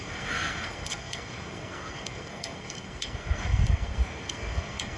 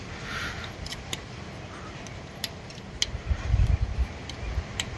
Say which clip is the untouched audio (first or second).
second